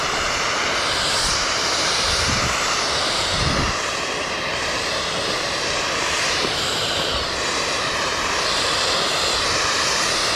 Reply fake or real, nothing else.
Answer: fake